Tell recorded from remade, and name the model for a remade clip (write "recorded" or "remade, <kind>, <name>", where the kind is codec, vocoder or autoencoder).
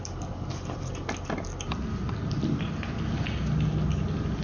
recorded